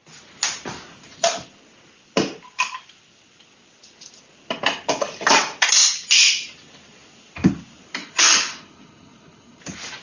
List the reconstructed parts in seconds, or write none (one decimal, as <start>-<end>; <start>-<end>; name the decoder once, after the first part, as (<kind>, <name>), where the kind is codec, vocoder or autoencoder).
8.0-9.6 (codec, HILCodec)